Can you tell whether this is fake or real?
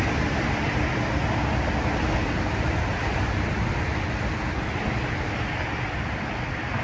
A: real